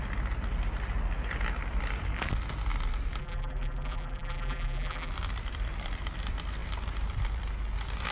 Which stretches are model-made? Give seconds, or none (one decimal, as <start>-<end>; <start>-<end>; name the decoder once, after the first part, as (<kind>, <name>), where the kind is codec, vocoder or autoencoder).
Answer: 3.2-5.1 (vocoder, BigVGAN v2)